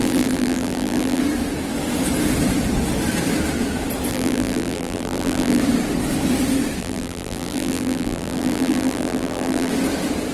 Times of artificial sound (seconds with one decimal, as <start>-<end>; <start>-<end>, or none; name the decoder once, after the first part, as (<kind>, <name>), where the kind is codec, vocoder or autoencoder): 0.0-1.2 (vocoder, BigVGAN v2); 4.1-5.6; 6.8-9.7